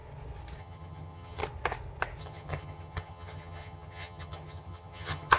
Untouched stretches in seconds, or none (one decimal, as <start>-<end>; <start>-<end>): 0.0-0.6; 1.4-2.2

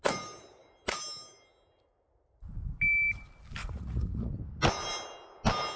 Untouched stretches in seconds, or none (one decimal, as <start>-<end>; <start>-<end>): 0.0-3.6; 4.3-5.8